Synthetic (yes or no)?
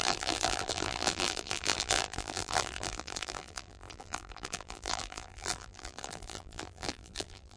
yes